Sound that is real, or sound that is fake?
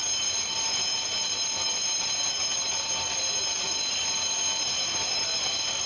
real